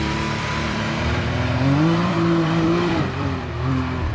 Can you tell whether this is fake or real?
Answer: fake